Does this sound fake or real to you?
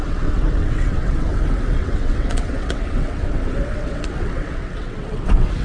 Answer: fake